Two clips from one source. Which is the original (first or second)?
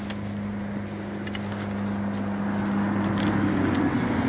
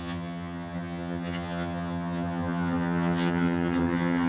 first